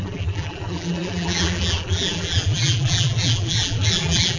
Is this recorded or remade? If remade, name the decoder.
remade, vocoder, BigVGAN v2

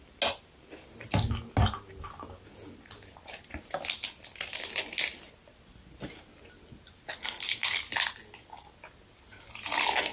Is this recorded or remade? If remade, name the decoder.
recorded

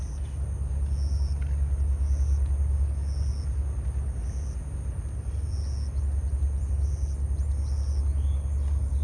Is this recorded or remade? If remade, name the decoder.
recorded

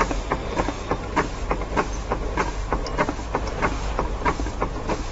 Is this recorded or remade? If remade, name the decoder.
recorded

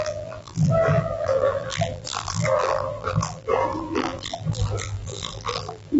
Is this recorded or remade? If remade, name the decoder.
remade, vocoder, BigVGAN v2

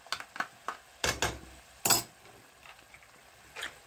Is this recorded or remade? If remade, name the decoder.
recorded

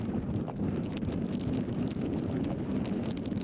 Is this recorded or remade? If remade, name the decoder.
recorded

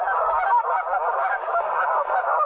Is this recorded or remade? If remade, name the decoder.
recorded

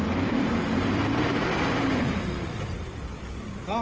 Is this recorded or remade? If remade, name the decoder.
remade, vocoder, BigVGAN v2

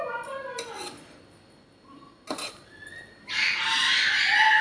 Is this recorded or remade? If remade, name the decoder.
recorded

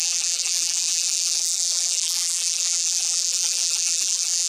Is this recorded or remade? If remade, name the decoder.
remade, vocoder, BigVGAN v2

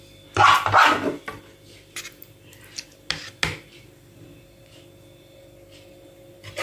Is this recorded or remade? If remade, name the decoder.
recorded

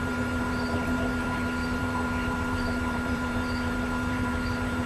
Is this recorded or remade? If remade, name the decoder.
remade, vocoder, BigVGAN v2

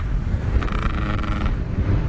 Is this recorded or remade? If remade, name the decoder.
remade, vocoder, BigVGAN v2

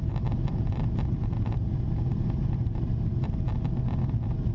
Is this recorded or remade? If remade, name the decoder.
recorded